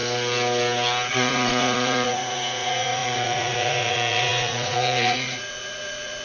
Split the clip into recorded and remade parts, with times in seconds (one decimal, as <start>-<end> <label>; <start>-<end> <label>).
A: 0.0-1.1 recorded; 1.1-6.2 remade